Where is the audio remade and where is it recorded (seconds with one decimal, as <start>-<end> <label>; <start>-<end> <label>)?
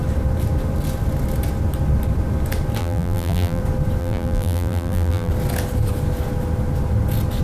0.0-2.8 recorded; 2.8-3.6 remade; 3.6-4.0 recorded; 4.0-5.3 remade; 5.3-7.4 recorded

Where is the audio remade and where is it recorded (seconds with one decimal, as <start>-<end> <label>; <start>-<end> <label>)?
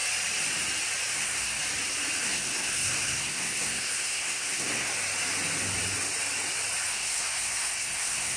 0.0-1.1 recorded; 1.1-1.6 remade; 1.6-2.2 recorded; 2.2-4.9 remade; 4.9-6.9 recorded; 6.9-8.4 remade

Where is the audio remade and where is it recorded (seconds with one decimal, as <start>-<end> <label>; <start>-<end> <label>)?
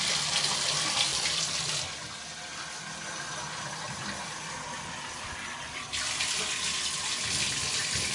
0.0-8.1 recorded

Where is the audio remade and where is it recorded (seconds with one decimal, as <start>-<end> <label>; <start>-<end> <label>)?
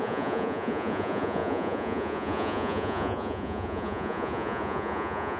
0.0-5.4 remade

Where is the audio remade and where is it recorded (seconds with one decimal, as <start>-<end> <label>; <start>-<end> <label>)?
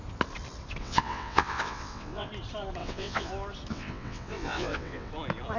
0.0-0.8 recorded; 0.8-2.3 remade; 2.3-2.8 recorded; 2.8-3.3 remade; 3.3-3.7 recorded; 3.7-5.1 remade; 5.1-5.6 recorded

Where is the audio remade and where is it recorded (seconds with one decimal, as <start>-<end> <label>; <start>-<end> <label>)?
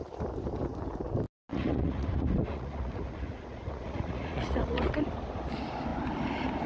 0.0-1.5 recorded; 1.5-4.9 remade; 4.9-6.7 recorded